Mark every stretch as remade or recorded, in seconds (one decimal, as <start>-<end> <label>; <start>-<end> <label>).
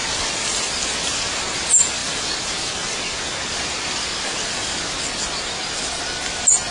0.0-6.7 recorded